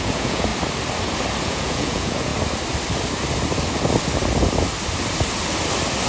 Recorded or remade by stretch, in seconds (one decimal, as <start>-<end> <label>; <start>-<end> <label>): 0.0-0.5 remade; 0.5-1.4 recorded; 1.4-2.3 remade; 2.3-6.1 recorded